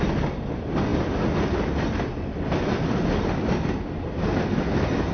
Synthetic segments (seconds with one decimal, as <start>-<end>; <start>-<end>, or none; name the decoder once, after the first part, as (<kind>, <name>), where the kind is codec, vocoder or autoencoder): none